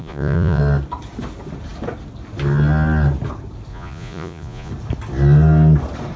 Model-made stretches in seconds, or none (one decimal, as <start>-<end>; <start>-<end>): 0.0-0.6; 3.7-4.7